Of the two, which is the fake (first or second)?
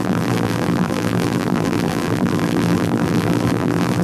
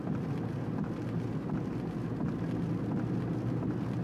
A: first